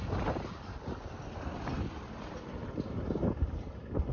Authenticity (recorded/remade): recorded